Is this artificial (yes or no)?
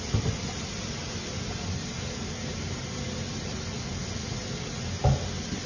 no